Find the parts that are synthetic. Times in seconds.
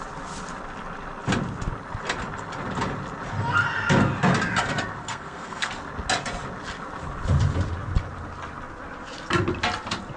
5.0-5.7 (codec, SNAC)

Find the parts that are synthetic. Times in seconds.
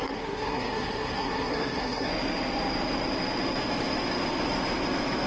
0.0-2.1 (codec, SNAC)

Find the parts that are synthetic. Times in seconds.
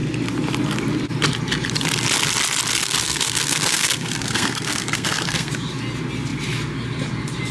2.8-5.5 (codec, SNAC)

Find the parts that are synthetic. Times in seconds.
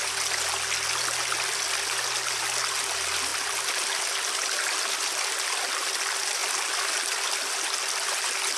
none